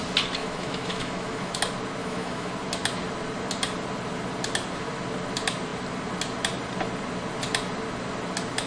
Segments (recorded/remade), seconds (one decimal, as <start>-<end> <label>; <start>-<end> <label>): 0.0-0.4 recorded; 0.4-1.6 remade; 1.6-2.0 recorded; 2.0-2.5 remade; 2.5-8.7 recorded